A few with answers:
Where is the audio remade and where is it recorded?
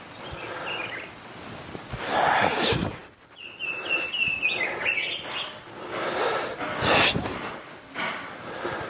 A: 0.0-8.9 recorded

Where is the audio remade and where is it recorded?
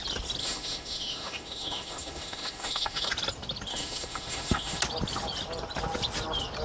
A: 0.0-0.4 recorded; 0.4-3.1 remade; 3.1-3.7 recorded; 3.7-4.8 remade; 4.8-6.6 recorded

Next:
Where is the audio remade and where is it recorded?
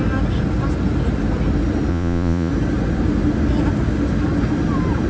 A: 0.0-1.9 recorded; 1.9-2.5 remade; 2.5-5.1 recorded